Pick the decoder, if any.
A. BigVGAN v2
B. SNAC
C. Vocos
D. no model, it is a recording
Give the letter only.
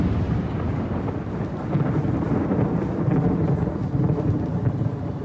D